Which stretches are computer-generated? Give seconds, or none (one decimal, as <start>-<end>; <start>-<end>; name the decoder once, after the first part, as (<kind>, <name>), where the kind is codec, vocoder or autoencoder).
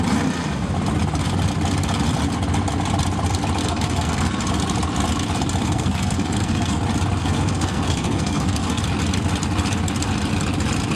3.6-4.4 (codec, SNAC); 5.6-6.8; 7.2-8.8